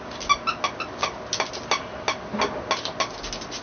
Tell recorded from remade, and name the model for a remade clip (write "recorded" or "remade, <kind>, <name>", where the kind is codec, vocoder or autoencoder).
recorded